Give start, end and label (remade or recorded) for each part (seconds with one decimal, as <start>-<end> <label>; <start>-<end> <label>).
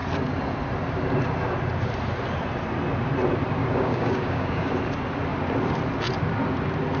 0.0-3.6 recorded; 3.6-4.7 remade; 4.7-7.0 recorded